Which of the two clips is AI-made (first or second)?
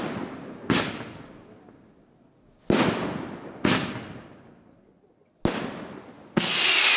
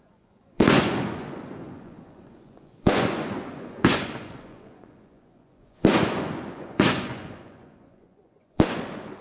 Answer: second